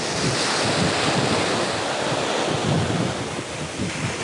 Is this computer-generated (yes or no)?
no